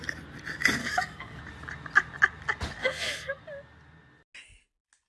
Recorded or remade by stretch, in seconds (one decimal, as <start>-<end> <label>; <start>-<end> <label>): 0.0-0.8 recorded; 0.8-1.4 remade; 1.4-2.8 recorded; 2.8-3.4 remade; 3.4-5.1 recorded

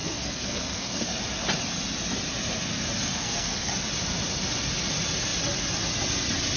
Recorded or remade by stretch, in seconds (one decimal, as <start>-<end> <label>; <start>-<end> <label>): 0.0-1.2 remade; 1.2-3.0 recorded; 3.0-3.7 remade; 3.7-6.6 recorded